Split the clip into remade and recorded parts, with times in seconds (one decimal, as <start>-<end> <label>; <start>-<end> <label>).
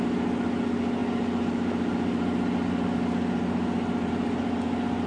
0.0-5.1 recorded